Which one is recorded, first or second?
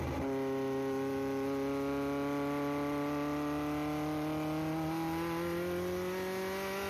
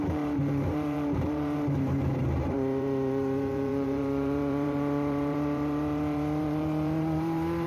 first